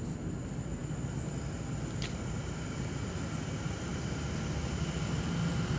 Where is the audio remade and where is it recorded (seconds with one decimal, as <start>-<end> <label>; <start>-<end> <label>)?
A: 0.0-5.8 recorded